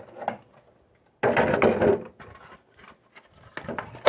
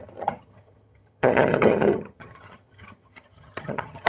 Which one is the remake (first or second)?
second